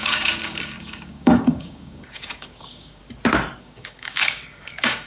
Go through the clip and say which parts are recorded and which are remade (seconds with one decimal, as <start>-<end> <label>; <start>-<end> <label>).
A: 0.0-3.0 remade; 3.0-3.6 recorded; 3.6-5.1 remade